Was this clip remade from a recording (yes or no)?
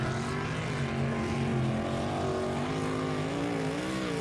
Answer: no